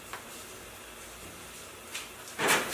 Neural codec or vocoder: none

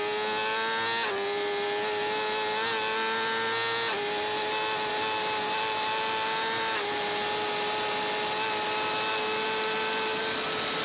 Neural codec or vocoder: none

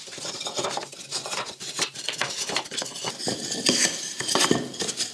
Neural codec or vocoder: vocoder, BigVGAN v2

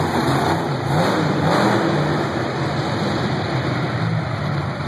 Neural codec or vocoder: vocoder, BigVGAN v2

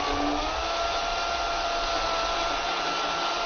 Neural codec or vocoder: none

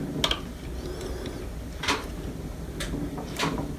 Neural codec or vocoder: none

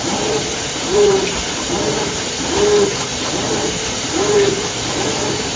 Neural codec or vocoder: vocoder, BigVGAN v2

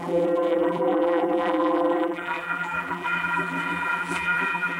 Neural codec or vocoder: vocoder, BigVGAN v2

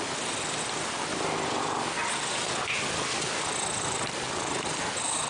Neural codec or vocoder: none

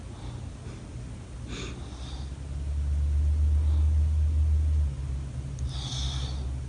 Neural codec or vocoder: none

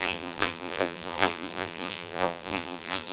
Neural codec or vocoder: vocoder, BigVGAN v2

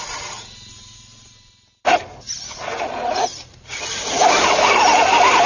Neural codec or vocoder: none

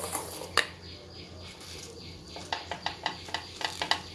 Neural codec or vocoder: none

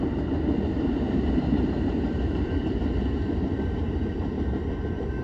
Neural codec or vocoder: vocoder, BigVGAN v2